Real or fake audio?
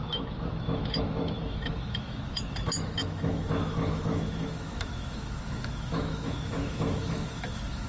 fake